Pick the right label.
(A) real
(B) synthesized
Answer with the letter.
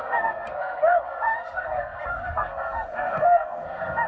B